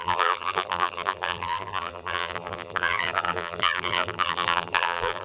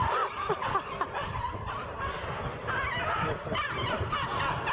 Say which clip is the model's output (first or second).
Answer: first